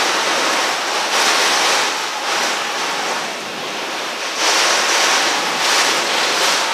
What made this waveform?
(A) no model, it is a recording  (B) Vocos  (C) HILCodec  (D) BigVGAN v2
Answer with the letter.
A